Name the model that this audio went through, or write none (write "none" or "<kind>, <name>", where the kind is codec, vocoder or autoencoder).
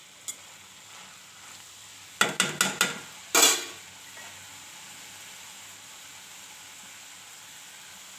none